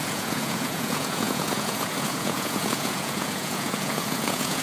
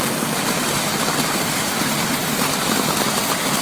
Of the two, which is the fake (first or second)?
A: first